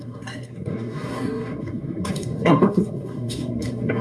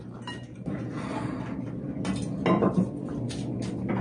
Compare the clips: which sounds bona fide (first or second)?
second